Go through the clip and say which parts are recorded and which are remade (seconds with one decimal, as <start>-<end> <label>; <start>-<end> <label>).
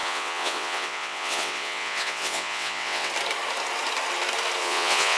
0.0-3.1 remade; 3.1-4.6 recorded; 4.6-5.2 remade